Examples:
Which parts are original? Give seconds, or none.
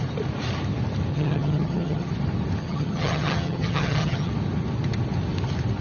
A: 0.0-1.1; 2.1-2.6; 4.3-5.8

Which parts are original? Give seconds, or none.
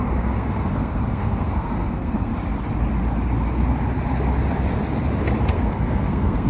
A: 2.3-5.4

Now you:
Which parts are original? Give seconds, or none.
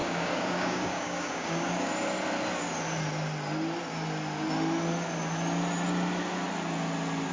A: 1.9-7.3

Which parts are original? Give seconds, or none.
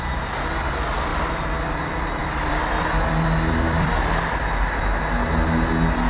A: 0.0-2.2; 3.9-6.1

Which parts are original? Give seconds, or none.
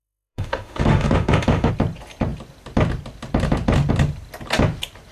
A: 1.7-5.1